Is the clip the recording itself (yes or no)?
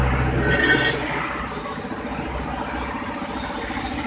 yes